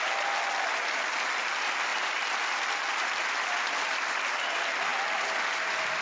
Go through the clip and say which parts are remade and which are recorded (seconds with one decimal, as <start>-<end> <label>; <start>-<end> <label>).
0.0-1.9 recorded; 1.9-4.1 remade; 4.1-6.0 recorded